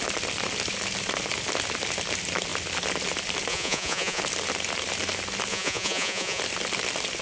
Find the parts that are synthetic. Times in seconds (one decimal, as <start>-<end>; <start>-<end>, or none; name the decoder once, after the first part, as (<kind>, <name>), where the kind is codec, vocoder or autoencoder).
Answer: 3.5-4.2 (vocoder, Vocos); 5.5-6.4